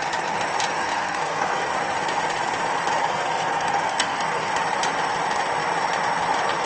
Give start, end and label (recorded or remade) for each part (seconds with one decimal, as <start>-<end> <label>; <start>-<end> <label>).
0.0-0.8 recorded; 0.8-1.7 remade; 1.7-3.0 recorded; 3.0-4.5 remade; 4.5-6.7 recorded